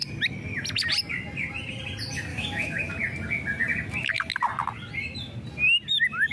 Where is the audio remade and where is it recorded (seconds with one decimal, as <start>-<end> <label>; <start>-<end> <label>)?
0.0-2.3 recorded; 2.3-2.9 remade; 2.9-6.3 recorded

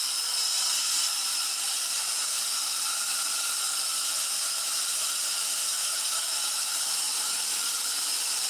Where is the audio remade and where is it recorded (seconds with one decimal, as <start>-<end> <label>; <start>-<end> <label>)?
0.0-5.7 recorded; 5.7-7.6 remade; 7.6-8.5 recorded

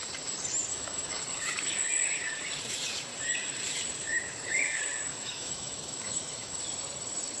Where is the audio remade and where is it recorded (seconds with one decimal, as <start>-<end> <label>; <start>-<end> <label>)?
0.0-0.7 recorded; 0.7-1.2 remade; 1.2-5.1 recorded; 5.1-6.6 remade; 6.6-7.4 recorded

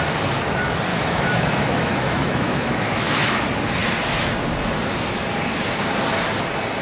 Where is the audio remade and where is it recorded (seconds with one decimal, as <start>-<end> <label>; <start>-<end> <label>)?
0.0-0.9 recorded; 0.9-3.4 remade; 3.4-6.8 recorded

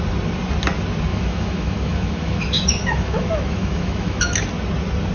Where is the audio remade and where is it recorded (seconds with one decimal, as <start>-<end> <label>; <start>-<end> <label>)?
0.0-1.1 recorded; 1.1-4.2 remade; 4.2-5.1 recorded